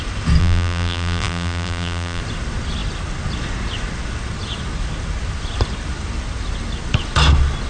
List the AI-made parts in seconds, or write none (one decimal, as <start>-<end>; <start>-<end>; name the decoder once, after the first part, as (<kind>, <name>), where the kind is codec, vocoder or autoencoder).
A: 0.4-2.2 (vocoder, BigVGAN v2)